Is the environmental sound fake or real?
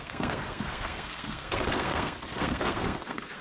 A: fake